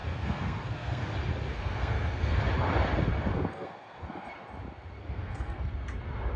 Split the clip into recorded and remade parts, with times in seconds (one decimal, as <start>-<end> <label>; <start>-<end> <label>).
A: 0.0-1.1 remade; 1.1-1.5 recorded; 1.5-2.4 remade; 2.4-3.3 recorded; 3.3-4.3 remade; 4.3-5.0 recorded; 5.0-5.7 remade; 5.7-6.4 recorded